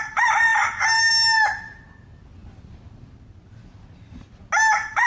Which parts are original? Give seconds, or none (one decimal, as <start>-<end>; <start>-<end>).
0.0-5.1